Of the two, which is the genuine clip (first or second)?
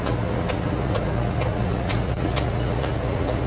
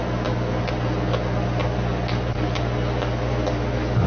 second